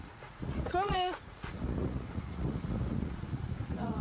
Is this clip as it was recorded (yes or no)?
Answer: no